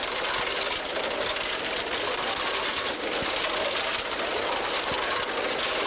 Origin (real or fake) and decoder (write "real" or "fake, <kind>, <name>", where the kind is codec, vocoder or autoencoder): real